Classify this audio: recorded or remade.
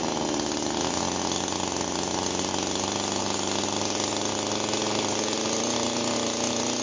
recorded